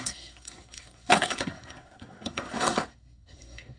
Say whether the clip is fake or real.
fake